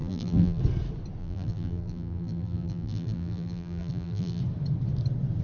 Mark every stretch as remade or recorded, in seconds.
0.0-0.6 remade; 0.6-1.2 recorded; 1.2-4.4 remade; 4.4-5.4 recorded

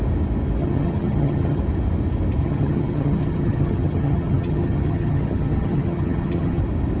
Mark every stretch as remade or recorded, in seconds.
0.0-0.6 recorded; 0.6-1.6 remade; 1.6-2.4 recorded; 2.4-6.6 remade; 6.6-7.0 recorded

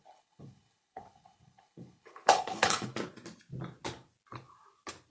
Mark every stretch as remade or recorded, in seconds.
0.0-2.9 remade; 2.9-5.1 recorded

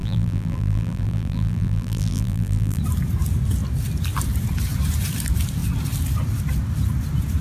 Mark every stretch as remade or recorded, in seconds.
0.0-2.8 remade; 2.8-7.4 recorded

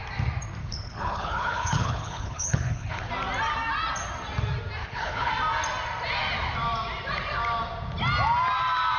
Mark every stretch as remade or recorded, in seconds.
0.0-0.6 recorded; 0.6-3.1 remade; 3.1-4.8 recorded; 4.8-5.3 remade; 5.3-9.0 recorded

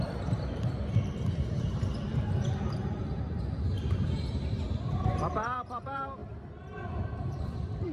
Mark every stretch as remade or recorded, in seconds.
0.0-6.2 remade; 6.2-7.4 recorded; 7.4-7.9 remade